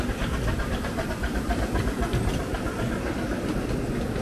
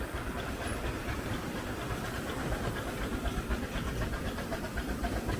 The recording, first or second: first